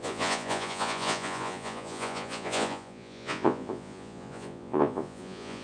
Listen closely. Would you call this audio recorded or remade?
remade